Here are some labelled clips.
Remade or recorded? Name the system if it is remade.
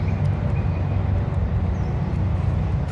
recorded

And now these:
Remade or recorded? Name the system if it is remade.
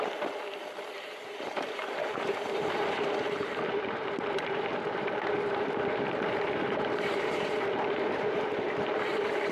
remade, vocoder, BigVGAN v2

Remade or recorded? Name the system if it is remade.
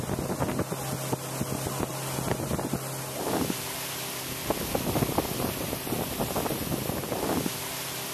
recorded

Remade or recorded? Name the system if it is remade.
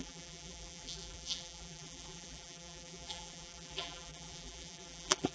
remade, vocoder, BigVGAN v2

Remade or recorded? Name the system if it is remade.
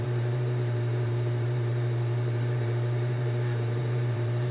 remade, vocoder, BigVGAN v2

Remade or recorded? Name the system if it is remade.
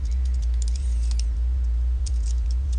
remade, vocoder, BigVGAN v2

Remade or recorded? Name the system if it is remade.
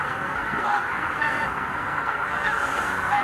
remade, codec, SNAC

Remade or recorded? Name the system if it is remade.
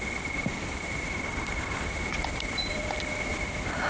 remade, vocoder, BigVGAN v2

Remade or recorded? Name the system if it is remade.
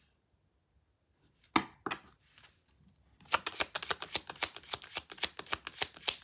recorded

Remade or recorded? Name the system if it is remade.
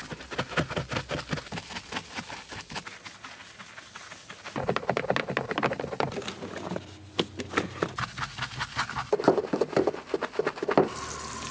recorded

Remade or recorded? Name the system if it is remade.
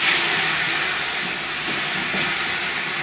remade, vocoder, BigVGAN v2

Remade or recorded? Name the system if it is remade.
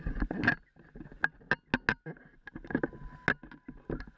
recorded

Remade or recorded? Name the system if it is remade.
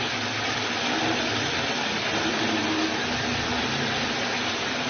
recorded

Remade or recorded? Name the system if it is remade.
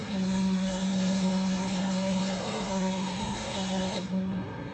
remade, codec, SNAC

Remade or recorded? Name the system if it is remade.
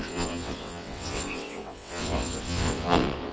remade, vocoder, WaveNeXt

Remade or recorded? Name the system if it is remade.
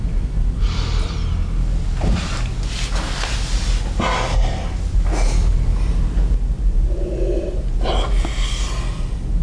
recorded